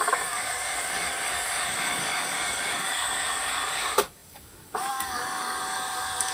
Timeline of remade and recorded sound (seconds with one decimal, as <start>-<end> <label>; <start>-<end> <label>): 0.0-6.3 remade